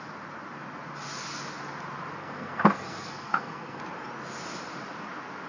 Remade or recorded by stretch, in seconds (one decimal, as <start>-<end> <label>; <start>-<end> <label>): 0.0-2.2 recorded; 2.2-3.8 remade; 3.8-5.5 recorded